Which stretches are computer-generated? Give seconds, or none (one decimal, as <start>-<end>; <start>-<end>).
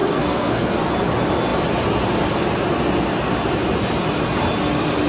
0.0-0.9